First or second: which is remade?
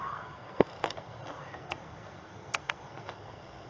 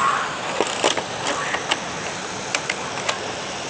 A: first